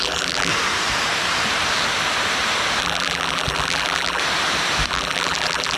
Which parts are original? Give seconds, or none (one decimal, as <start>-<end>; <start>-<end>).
0.5-2.8; 4.2-4.9

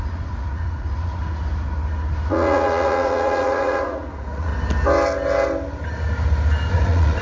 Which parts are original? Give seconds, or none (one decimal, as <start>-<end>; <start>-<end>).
1.2-2.3; 4.5-6.7

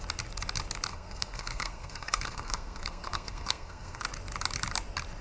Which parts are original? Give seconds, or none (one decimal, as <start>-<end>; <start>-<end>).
0.0-0.9; 4.0-5.2